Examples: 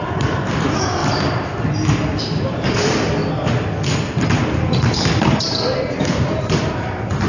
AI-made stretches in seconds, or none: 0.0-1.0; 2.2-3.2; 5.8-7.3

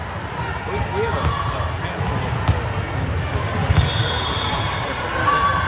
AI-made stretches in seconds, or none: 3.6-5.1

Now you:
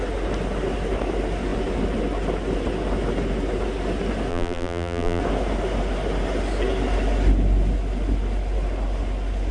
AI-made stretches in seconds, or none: 4.3-5.2

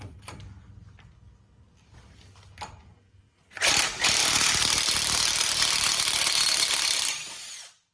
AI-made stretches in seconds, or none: 4.2-7.0

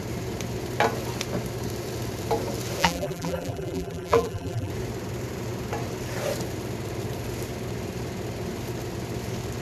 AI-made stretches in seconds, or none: 2.8-4.7